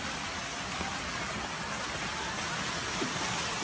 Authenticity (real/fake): real